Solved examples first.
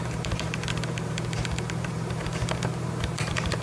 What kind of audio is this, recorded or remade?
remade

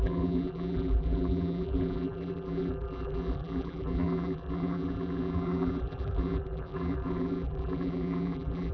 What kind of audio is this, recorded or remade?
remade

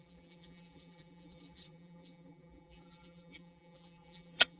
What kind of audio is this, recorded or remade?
remade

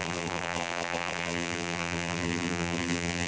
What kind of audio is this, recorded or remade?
remade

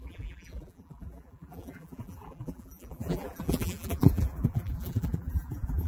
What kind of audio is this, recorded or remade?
remade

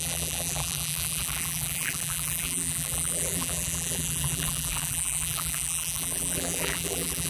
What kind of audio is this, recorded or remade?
remade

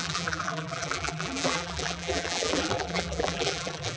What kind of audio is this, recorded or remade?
remade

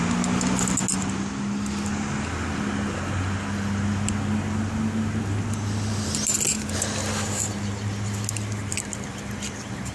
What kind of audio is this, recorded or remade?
recorded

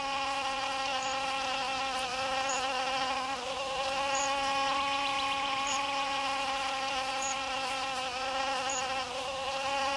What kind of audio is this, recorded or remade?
remade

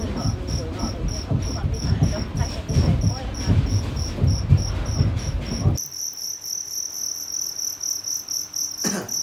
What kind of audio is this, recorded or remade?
recorded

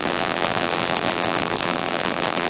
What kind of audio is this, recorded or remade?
remade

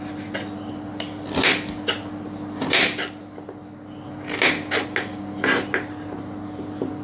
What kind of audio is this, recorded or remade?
recorded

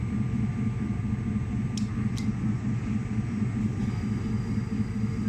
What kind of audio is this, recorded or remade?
recorded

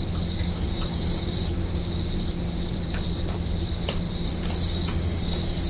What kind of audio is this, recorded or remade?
recorded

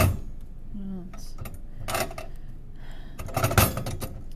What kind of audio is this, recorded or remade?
recorded